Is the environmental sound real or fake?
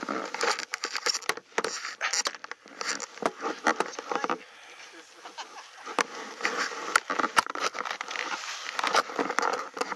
real